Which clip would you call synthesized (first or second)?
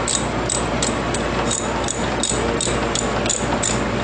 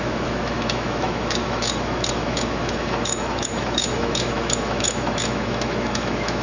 second